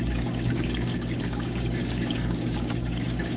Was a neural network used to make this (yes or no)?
yes